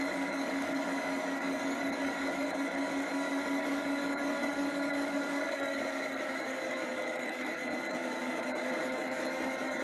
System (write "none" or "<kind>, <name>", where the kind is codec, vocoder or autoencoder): codec, DAC